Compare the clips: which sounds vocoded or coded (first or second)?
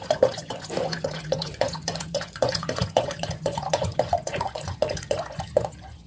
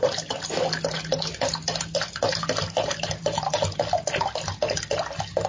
first